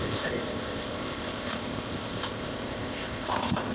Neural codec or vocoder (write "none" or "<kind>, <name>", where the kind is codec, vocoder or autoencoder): codec, ZipCodec